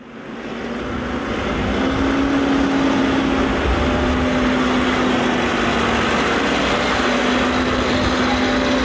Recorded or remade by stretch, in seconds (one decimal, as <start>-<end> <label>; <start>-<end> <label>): 0.0-8.8 recorded